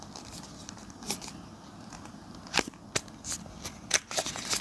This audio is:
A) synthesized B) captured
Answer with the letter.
B